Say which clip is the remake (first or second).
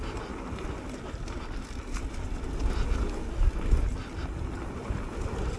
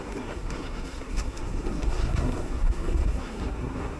second